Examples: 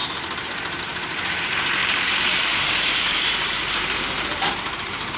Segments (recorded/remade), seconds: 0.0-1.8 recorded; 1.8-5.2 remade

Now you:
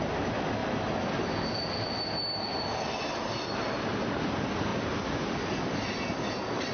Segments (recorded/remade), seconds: 0.0-6.7 recorded